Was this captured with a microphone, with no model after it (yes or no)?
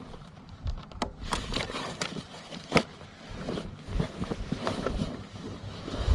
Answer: no